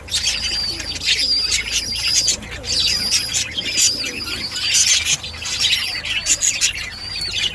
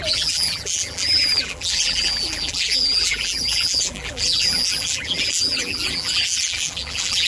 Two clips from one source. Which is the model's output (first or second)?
second